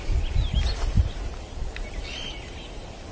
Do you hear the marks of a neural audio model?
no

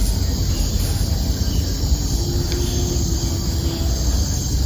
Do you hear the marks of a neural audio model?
no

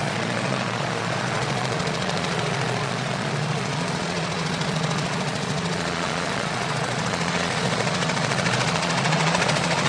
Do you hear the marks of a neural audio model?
yes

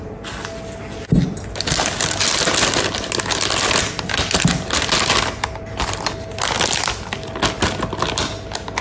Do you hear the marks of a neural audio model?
no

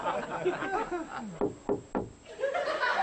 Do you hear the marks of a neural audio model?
no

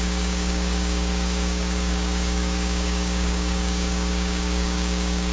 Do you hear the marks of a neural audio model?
yes